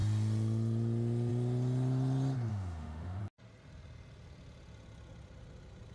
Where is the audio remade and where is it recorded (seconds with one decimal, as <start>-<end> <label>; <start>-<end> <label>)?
0.0-2.5 recorded; 2.5-3.2 remade; 3.2-5.9 recorded